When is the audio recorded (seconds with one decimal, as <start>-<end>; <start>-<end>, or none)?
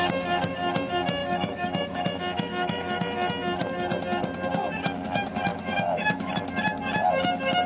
0.0-1.2; 3.3-5.5; 6.3-7.7